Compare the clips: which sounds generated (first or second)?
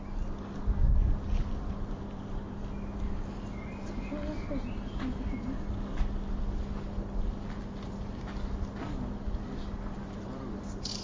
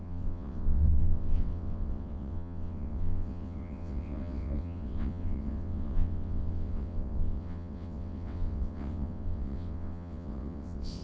second